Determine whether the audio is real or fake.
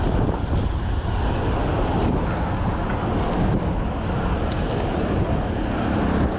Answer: real